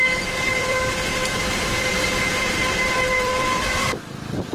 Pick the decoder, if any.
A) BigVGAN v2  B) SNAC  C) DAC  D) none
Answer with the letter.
A